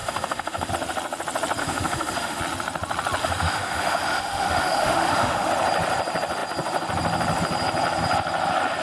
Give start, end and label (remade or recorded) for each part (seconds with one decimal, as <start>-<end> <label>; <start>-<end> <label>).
0.0-0.7 remade; 0.7-1.6 recorded; 1.6-2.4 remade; 2.4-3.2 recorded; 3.2-5.5 remade; 5.5-8.8 recorded